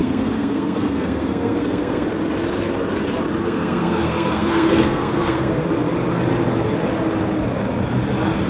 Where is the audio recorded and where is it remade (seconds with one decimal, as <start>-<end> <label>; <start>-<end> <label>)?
0.0-2.1 remade; 2.1-3.4 recorded; 3.4-5.6 remade; 5.6-8.5 recorded